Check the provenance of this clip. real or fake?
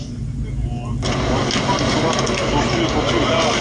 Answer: real